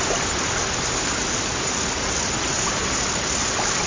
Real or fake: real